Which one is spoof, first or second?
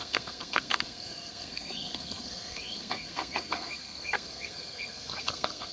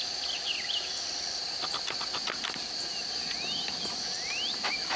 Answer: first